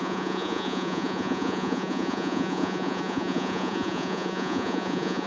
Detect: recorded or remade remade